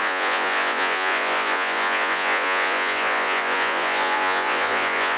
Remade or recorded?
remade